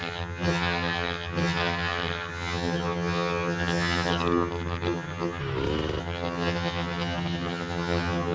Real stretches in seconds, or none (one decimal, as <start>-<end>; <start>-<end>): 5.4-6.0